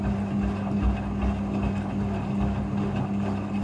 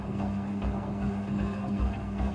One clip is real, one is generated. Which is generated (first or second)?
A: second